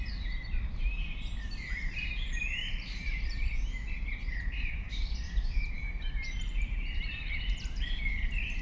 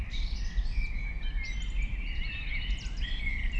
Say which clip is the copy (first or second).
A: first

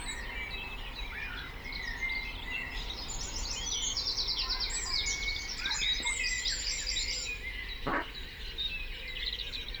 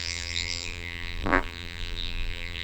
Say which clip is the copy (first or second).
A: second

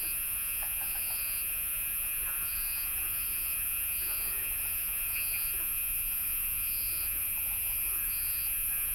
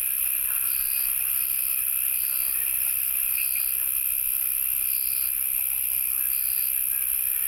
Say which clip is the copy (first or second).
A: first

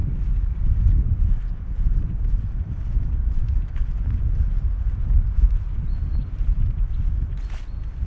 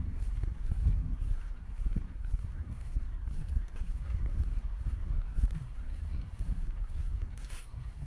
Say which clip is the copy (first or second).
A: second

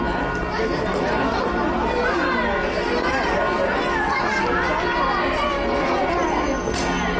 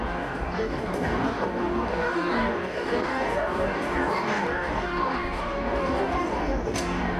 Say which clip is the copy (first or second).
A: second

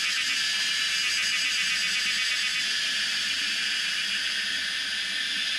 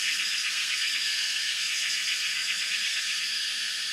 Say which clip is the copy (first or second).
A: second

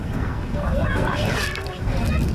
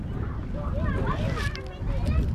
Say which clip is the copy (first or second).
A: first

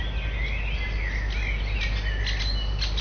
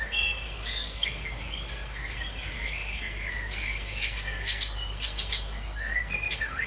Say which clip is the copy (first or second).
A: second